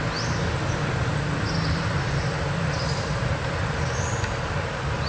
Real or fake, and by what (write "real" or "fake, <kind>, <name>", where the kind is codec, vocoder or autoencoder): fake, vocoder, BigVGAN v2